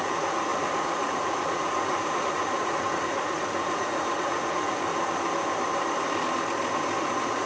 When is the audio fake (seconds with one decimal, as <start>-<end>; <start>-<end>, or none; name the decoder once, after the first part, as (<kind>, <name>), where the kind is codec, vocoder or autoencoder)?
0.0-4.9 (vocoder, Vocos); 7.0-7.5